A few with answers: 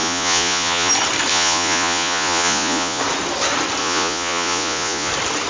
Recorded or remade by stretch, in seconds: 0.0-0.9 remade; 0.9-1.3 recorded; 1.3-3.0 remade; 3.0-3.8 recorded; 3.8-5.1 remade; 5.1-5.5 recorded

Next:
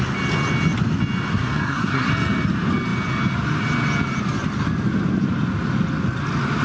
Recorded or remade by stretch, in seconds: 0.0-1.3 recorded; 1.3-2.1 remade; 2.1-6.6 recorded

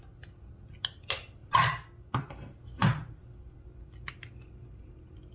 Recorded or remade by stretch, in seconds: 0.0-5.3 recorded

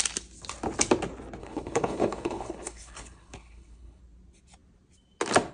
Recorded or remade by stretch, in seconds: 0.0-1.4 recorded; 1.4-4.0 remade; 4.0-5.5 recorded

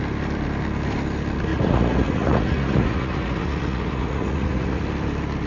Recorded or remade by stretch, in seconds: 0.0-1.5 recorded; 1.5-4.8 remade; 4.8-5.5 recorded

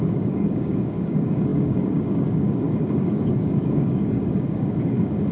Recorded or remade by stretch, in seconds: 0.0-5.3 remade

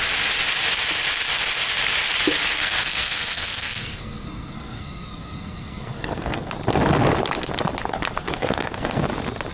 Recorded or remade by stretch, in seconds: 0.0-2.6 recorded; 2.6-6.5 remade; 6.5-8.2 recorded; 8.2-9.0 remade; 9.0-9.5 recorded